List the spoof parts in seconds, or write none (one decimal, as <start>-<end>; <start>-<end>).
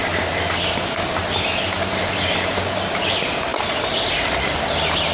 none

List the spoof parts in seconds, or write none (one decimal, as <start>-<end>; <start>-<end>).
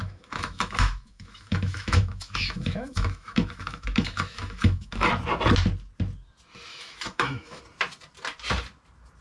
0.0-5.1; 6.7-7.6